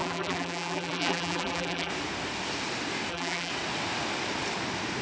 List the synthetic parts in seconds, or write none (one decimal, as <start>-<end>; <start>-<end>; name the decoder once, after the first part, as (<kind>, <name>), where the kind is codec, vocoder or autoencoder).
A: 0.0-1.9 (vocoder, BigVGAN v2); 3.1-3.5